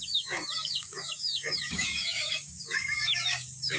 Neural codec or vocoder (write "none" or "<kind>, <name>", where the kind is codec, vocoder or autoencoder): codec, DAC